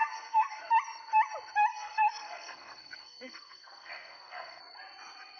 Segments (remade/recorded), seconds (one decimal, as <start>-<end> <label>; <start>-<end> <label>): 0.0-0.6 remade; 0.6-1.7 recorded; 1.7-4.6 remade; 4.6-5.4 recorded

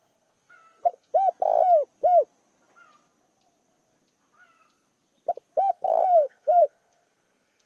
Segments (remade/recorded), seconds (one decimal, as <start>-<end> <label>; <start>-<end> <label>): 0.0-1.1 remade; 1.1-5.7 recorded; 5.7-7.7 remade

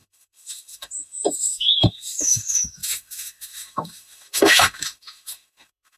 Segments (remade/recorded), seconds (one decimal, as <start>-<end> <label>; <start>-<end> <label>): 0.0-6.0 remade

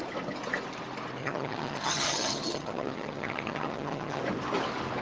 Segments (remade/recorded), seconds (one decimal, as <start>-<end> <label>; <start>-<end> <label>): 0.0-1.2 recorded; 1.2-4.2 remade; 4.2-5.0 recorded

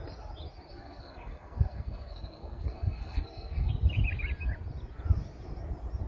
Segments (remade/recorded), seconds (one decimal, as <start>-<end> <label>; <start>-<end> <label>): 0.0-0.7 recorded; 0.7-3.7 remade; 3.7-6.1 recorded

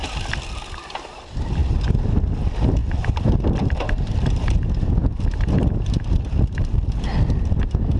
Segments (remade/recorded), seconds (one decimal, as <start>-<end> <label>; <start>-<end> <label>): 0.0-8.0 recorded